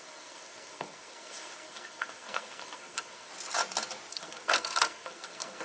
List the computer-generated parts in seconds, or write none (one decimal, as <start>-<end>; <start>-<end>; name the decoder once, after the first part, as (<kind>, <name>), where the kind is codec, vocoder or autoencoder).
0.0-3.3 (codec, SNAC); 4.1-5.6